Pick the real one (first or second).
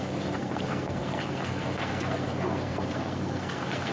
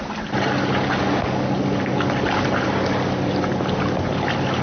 second